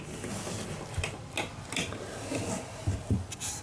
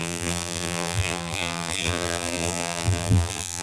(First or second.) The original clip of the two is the first